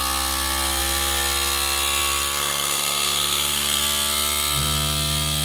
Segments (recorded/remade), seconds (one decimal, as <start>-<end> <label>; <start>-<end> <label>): 0.0-2.4 recorded; 2.4-3.8 remade; 3.8-5.4 recorded